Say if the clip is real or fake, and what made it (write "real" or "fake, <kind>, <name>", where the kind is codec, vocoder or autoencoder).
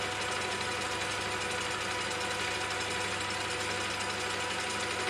real